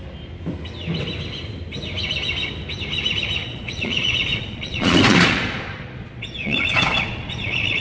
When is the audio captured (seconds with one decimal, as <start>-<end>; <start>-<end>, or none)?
0.0-3.4